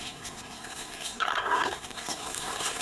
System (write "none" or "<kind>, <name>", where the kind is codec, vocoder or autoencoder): codec, SNAC